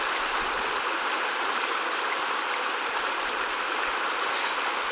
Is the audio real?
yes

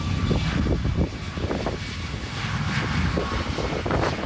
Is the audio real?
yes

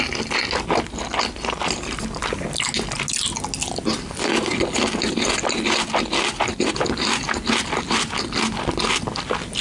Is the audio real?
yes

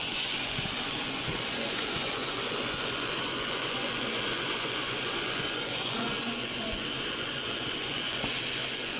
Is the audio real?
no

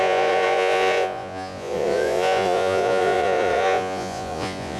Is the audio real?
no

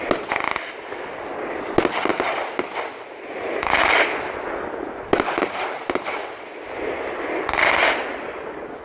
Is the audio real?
yes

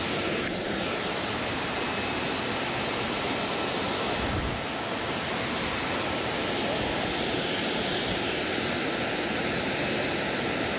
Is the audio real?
yes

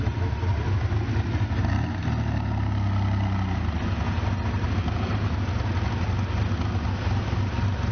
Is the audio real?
yes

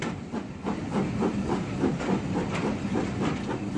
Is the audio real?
yes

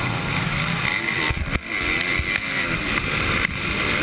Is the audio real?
yes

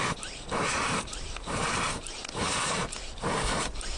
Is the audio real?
yes